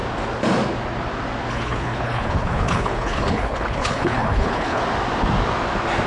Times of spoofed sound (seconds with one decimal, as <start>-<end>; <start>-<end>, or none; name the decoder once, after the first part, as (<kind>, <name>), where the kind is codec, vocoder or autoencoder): 1.5-4.8 (codec, HILCodec)